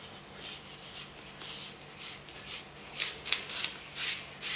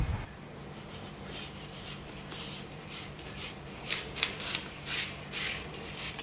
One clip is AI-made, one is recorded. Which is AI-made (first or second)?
second